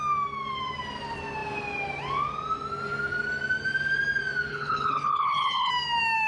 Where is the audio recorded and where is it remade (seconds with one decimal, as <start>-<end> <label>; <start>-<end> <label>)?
0.0-4.5 recorded; 4.5-5.7 remade; 5.7-6.3 recorded

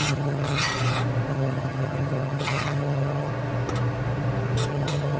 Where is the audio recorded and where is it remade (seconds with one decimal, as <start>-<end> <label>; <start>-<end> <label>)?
0.0-0.7 remade; 0.7-1.3 recorded; 1.3-3.3 remade; 3.3-4.7 recorded; 4.7-5.2 remade

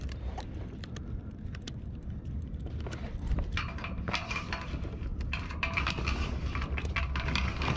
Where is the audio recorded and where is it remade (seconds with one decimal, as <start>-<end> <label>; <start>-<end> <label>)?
0.0-4.5 remade; 4.5-5.1 recorded; 5.1-7.0 remade; 7.0-7.8 recorded

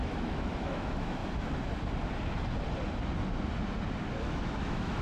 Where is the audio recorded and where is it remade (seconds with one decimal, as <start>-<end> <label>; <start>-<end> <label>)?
0.0-1.2 remade; 1.2-4.2 recorded; 4.2-5.0 remade

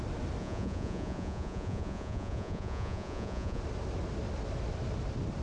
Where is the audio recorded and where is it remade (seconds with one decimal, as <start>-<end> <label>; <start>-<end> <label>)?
0.0-0.4 recorded; 0.4-3.6 remade; 3.6-5.4 recorded

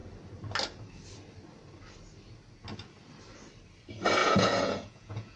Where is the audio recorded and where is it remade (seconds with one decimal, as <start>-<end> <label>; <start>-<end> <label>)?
0.0-4.2 recorded; 4.2-5.4 remade